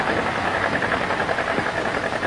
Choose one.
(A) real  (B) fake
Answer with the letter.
A